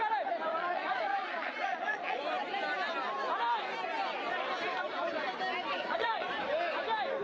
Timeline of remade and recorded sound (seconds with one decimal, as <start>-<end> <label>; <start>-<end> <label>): 0.0-0.5 recorded; 0.5-2.2 remade; 2.2-5.7 recorded; 5.7-6.3 remade; 6.3-7.2 recorded